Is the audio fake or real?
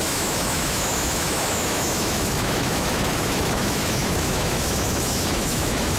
fake